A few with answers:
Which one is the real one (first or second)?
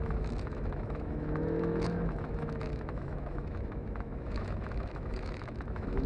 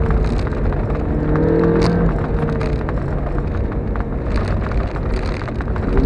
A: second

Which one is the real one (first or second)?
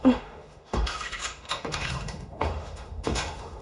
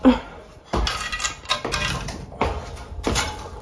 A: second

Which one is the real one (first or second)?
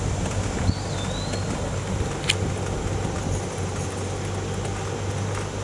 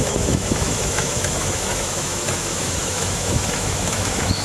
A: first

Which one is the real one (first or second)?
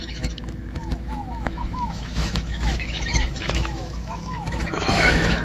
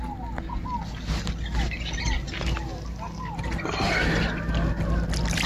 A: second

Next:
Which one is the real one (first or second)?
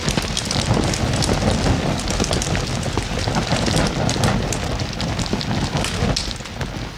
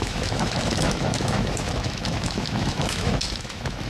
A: first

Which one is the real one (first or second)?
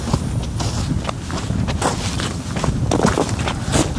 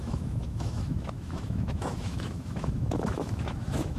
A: first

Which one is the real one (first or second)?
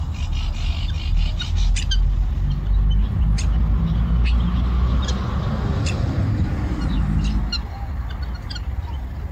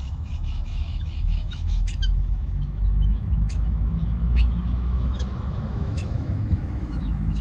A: first